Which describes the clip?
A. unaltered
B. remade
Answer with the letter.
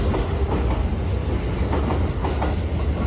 A